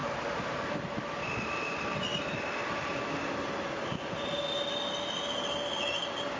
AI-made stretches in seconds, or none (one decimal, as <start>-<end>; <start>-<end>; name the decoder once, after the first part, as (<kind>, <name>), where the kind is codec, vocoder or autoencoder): 0.0-1.1 (vocoder, BigVGAN v2)